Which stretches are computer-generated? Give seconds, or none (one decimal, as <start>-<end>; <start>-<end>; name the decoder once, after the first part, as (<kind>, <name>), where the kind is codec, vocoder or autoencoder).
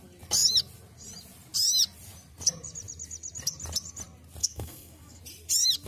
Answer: 4.4-5.2 (codec, SNAC)